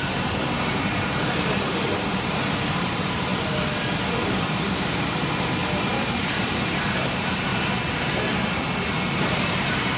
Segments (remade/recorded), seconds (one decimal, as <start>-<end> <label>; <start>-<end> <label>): 0.0-3.3 remade; 3.3-4.2 recorded; 4.2-7.5 remade; 7.5-9.0 recorded; 9.0-10.0 remade